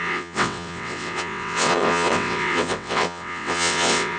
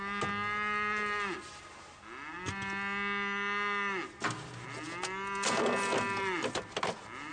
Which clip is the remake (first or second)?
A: first